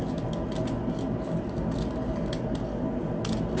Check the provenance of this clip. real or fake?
real